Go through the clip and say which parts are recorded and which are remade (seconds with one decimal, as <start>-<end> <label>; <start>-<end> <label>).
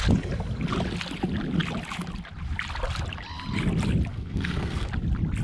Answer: 0.0-4.1 recorded; 4.1-4.9 remade; 4.9-5.4 recorded